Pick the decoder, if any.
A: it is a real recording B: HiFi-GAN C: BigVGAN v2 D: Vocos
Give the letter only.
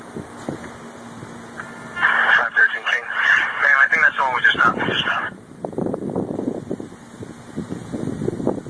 A